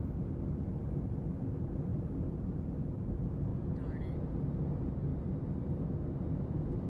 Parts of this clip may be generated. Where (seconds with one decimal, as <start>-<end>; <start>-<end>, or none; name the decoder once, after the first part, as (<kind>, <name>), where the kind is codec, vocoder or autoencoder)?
1.9-2.5 (vocoder, BigVGAN v2); 5.1-5.9